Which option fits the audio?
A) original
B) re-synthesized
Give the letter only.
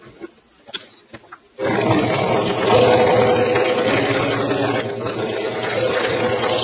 A